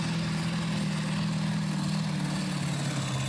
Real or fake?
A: real